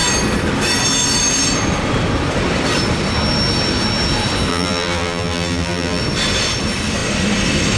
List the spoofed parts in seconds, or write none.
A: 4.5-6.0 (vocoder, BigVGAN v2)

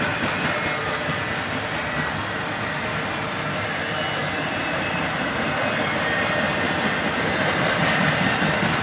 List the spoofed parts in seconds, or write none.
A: none

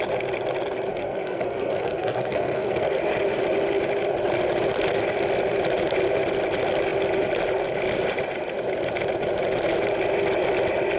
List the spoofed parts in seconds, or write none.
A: 0.9-3.0 (codec, SNAC)

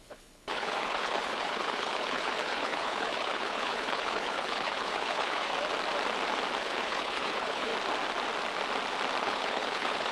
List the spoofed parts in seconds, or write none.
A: 0.0-5.5 (codec, HILCodec); 6.6-7.7; 9.2-10.1